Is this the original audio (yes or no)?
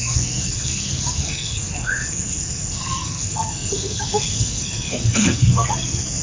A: no